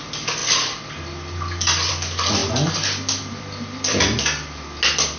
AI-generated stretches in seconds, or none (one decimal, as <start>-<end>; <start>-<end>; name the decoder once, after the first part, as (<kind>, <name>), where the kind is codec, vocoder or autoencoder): none